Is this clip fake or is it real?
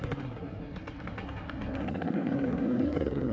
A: fake